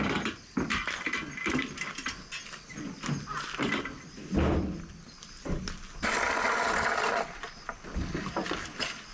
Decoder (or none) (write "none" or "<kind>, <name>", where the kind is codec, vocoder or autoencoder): none